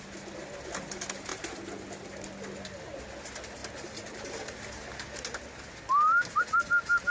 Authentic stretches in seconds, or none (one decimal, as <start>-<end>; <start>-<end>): 0.0-7.1